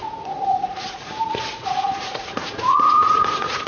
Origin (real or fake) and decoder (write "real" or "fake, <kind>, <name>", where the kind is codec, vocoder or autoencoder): fake, vocoder, Vocos